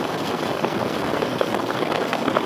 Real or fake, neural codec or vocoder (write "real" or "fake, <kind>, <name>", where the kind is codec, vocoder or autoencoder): fake, codec, SNAC